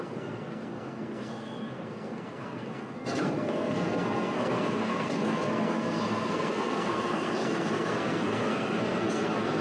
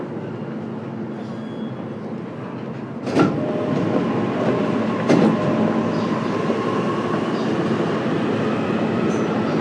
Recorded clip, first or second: second